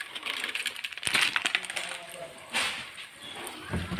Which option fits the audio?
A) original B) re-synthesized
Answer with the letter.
A